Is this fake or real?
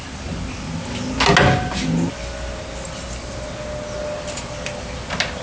real